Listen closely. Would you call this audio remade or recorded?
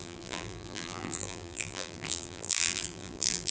remade